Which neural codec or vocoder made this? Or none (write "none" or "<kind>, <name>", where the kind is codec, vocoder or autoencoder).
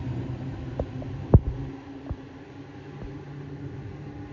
none